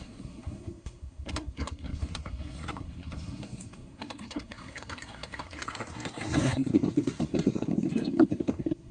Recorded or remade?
remade